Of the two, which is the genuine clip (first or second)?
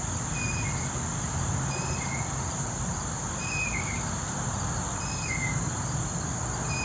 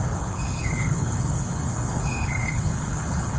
first